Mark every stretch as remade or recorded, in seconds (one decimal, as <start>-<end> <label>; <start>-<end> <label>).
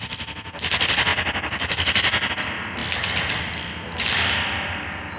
0.0-5.2 recorded